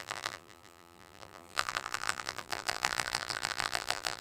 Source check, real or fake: fake